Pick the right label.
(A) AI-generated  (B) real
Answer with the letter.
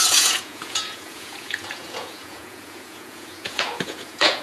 A